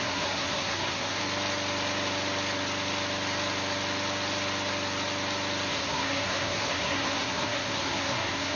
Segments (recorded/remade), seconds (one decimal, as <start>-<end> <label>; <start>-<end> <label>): 0.0-1.2 remade; 1.2-5.7 recorded; 5.7-8.6 remade